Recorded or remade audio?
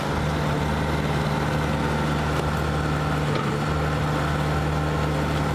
recorded